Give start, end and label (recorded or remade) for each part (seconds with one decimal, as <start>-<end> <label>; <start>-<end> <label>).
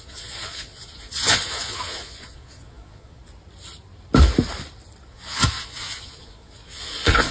0.0-3.2 remade; 3.2-5.1 recorded; 5.1-7.3 remade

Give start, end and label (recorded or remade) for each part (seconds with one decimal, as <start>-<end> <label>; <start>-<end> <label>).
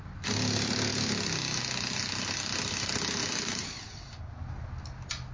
0.0-5.3 recorded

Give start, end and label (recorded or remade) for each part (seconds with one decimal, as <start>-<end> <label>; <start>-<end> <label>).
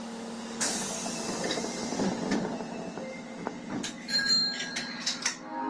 0.0-1.0 remade; 1.0-3.1 recorded; 3.1-5.7 remade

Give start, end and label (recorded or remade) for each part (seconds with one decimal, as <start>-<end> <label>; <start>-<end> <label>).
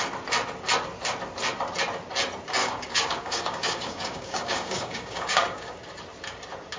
0.0-2.6 recorded; 2.6-5.8 remade; 5.8-6.8 recorded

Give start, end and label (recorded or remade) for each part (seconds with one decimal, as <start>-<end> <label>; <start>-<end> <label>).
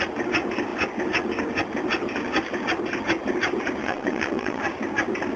0.0-3.8 recorded; 3.8-4.6 remade; 4.6-5.4 recorded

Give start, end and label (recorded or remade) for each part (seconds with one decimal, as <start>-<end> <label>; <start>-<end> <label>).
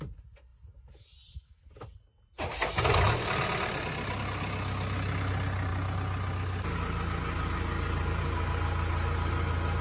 0.0-9.8 recorded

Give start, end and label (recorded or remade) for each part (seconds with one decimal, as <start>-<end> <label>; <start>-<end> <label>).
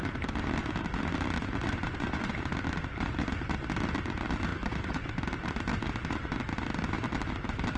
0.0-1.6 recorded; 1.6-2.3 remade; 2.3-4.5 recorded; 4.5-5.2 remade; 5.2-7.8 recorded